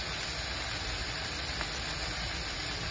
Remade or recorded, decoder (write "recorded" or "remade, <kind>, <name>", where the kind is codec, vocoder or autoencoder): recorded